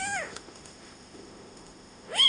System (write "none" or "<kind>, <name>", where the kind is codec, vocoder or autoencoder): autoencoder, DAC-VAE